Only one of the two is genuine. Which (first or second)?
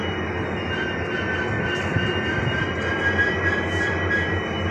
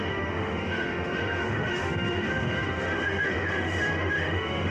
first